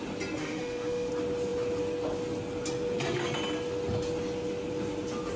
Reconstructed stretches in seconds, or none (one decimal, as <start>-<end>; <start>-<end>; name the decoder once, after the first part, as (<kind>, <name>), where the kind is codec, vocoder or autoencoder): 0.4-1.1 (autoencoder, DAC-VAE)